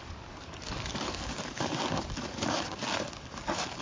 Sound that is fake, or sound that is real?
fake